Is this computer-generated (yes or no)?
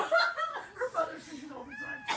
no